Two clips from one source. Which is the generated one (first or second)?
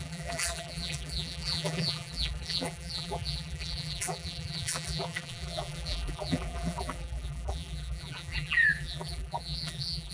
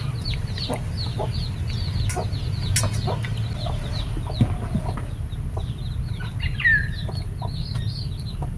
first